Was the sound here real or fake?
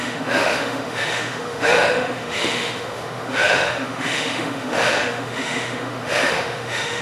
fake